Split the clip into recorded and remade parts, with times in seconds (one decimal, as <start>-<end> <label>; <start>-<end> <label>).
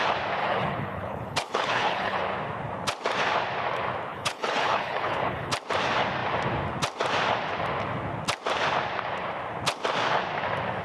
0.0-0.4 recorded; 0.4-2.2 remade; 2.2-4.1 recorded; 4.1-5.5 remade; 5.5-10.8 recorded